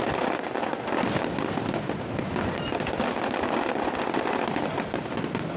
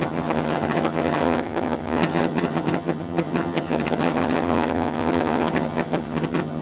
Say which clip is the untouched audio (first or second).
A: first